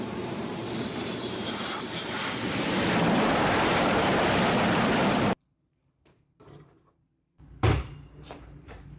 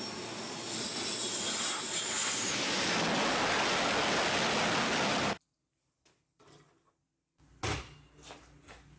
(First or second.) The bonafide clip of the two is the second